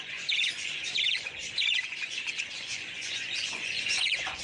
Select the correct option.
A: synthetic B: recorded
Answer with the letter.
A